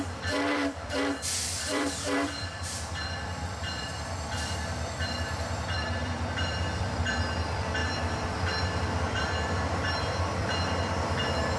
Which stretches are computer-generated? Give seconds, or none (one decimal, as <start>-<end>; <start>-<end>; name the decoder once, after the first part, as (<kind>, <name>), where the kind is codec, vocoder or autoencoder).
0.0-11.6 (vocoder, BigVGAN v2)